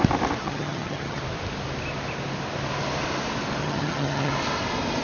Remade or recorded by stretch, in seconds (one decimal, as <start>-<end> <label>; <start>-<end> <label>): 0.0-0.4 recorded; 0.4-1.2 remade; 1.2-3.6 recorded; 3.6-4.3 remade; 4.3-5.0 recorded